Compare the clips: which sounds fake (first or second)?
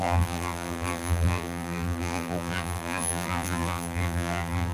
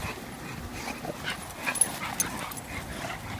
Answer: first